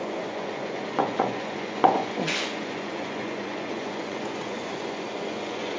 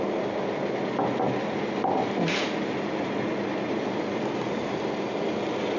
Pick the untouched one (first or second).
second